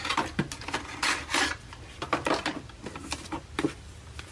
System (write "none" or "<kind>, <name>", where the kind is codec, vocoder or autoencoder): none